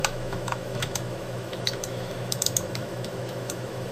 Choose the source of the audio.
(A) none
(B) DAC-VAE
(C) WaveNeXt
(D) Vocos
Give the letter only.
B